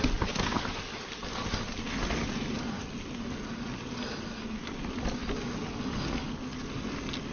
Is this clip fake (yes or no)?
no